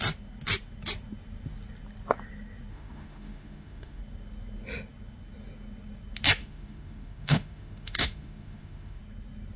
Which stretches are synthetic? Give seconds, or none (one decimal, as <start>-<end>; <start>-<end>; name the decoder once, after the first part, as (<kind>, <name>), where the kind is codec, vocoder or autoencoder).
2.7-4.0 (autoencoder, DAC-VAE); 6.4-9.0